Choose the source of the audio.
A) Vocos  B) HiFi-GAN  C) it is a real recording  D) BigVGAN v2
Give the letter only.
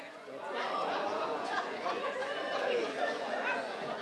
A